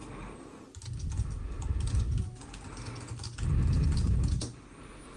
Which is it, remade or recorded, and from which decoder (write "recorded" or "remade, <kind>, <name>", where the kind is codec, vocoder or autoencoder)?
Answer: recorded